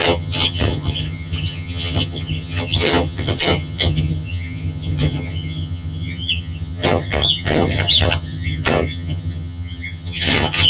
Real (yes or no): no